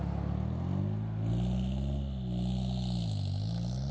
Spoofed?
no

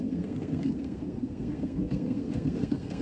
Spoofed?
yes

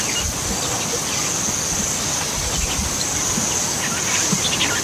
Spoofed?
no